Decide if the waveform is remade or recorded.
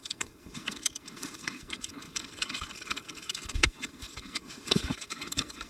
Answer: remade